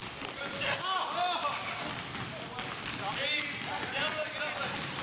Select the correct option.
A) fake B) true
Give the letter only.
B